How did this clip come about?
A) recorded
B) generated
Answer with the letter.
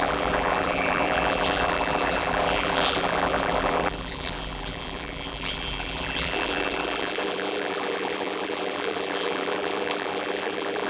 B